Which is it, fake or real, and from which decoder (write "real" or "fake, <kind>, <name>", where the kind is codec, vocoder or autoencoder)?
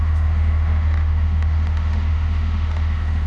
fake, autoencoder, DAC-VAE